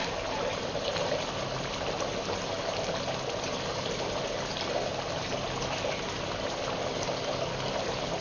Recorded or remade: recorded